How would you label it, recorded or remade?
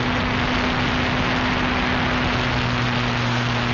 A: recorded